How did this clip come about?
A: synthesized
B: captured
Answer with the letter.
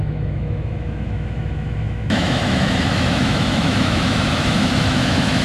A